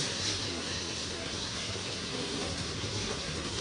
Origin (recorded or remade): remade